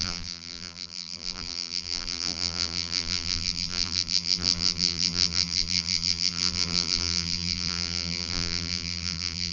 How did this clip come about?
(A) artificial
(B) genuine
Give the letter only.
A